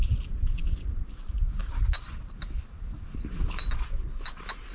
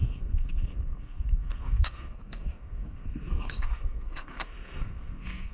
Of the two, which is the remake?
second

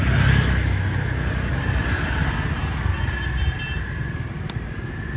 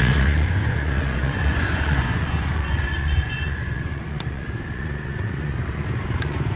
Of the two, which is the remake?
second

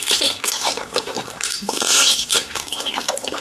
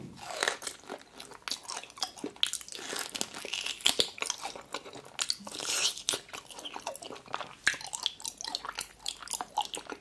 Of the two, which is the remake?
first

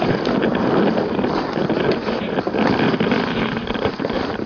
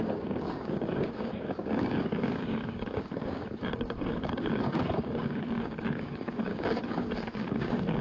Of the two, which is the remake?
second